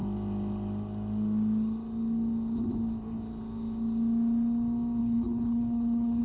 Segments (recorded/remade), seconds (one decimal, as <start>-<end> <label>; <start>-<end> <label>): 0.0-5.0 recorded; 5.0-6.2 remade